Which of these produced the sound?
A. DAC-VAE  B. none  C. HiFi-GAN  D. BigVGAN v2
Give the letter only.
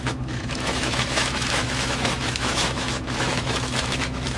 A